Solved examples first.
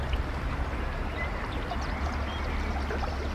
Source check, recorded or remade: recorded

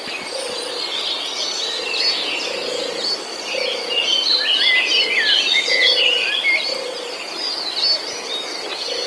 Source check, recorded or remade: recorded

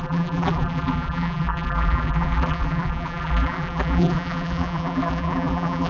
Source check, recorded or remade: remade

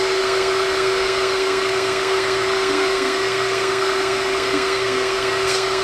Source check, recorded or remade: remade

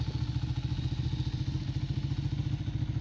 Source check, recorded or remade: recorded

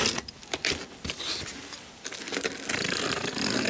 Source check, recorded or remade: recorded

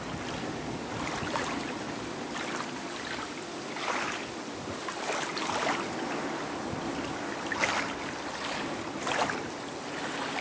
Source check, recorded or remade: recorded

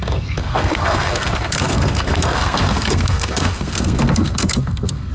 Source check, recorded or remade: remade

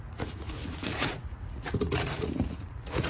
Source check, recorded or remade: remade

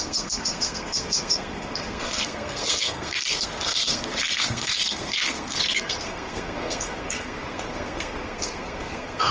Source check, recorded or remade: remade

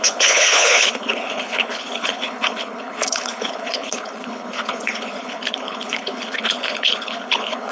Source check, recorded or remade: remade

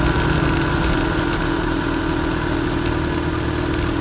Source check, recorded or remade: recorded